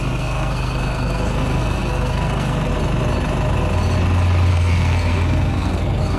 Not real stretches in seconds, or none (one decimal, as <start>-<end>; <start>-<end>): 0.0-2.7; 4.5-6.2